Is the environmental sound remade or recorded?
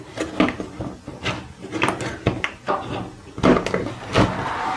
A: recorded